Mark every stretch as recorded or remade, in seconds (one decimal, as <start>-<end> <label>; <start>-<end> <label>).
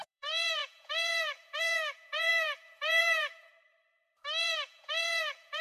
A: 0.0-3.5 remade; 3.5-4.4 recorded; 4.4-5.6 remade